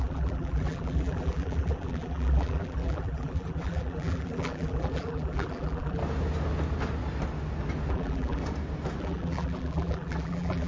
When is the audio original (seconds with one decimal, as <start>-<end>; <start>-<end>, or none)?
6.0-7.9; 8.4-9.0